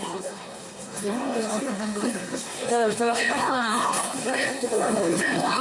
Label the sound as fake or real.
fake